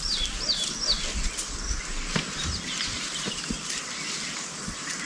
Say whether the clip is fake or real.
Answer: real